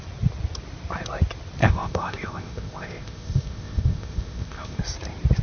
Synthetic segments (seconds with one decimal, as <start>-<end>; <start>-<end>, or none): 1.6-4.8